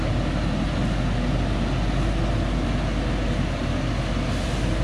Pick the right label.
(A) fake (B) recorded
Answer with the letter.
B